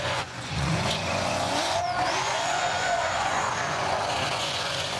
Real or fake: fake